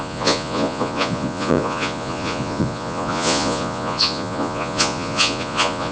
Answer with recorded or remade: remade